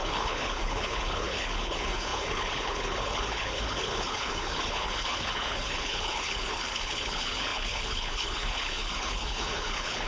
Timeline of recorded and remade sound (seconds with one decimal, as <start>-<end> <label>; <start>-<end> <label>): 0.0-10.1 remade